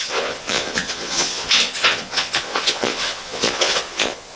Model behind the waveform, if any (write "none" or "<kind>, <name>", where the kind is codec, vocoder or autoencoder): vocoder, Vocos